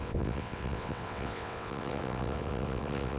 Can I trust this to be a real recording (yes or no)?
no